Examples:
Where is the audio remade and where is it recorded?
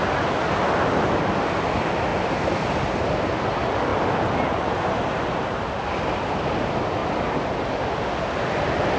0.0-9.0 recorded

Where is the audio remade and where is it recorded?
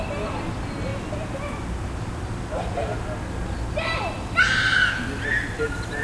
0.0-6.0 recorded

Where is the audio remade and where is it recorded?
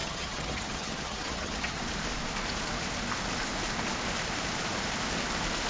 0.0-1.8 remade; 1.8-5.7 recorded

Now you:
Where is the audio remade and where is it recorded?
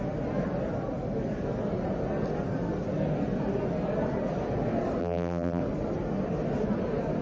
0.0-5.0 recorded; 5.0-5.6 remade; 5.6-7.2 recorded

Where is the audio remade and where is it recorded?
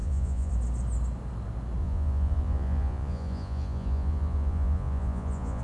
0.0-0.5 remade; 0.5-1.8 recorded; 1.8-5.6 remade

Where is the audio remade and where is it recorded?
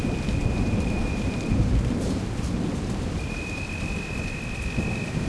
0.0-0.4 recorded; 0.4-3.6 remade; 3.6-5.3 recorded